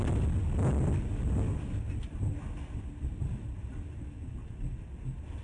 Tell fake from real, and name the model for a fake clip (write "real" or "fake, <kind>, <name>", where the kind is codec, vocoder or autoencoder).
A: real